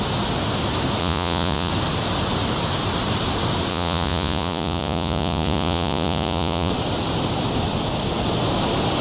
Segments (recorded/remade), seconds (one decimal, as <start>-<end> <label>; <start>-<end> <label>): 0.0-1.0 recorded; 1.0-1.7 remade; 1.7-3.7 recorded; 3.7-6.7 remade; 6.7-9.0 recorded